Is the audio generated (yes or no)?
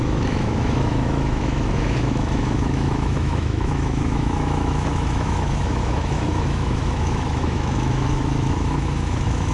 yes